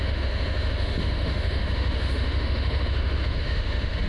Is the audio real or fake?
fake